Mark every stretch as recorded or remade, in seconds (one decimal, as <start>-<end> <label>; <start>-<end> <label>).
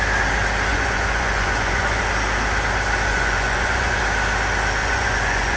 0.0-0.7 recorded; 0.7-2.0 remade; 2.0-3.1 recorded; 3.1-4.0 remade; 4.0-4.8 recorded; 4.8-5.6 remade